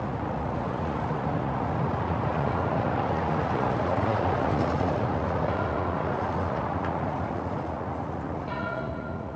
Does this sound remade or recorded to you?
remade